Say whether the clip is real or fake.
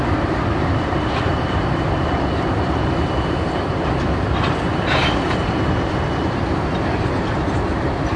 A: fake